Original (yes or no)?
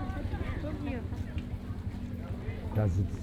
yes